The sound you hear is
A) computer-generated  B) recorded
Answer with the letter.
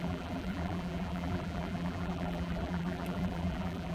A